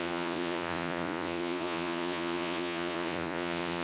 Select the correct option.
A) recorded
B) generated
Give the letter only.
B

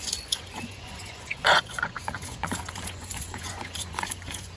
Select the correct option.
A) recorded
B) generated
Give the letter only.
B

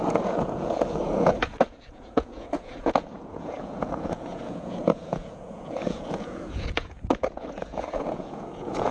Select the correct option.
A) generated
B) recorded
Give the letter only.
A